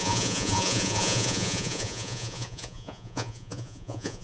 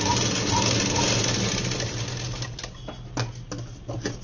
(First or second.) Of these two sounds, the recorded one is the second